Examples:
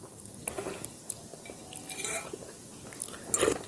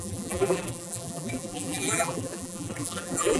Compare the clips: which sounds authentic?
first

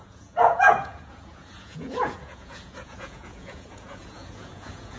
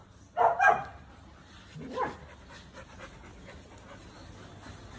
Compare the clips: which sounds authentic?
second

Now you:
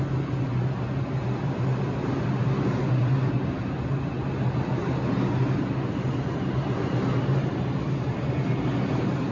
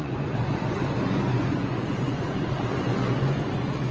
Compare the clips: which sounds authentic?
first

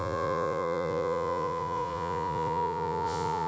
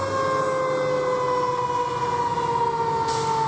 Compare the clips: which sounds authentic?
second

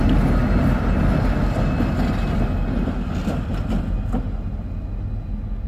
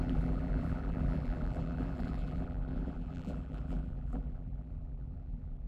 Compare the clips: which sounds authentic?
first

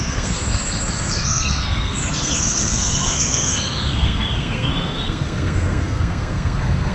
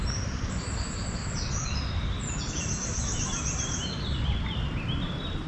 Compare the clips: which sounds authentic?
second